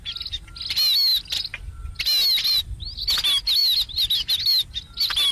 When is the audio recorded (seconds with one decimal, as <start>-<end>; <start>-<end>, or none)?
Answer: 0.0-5.3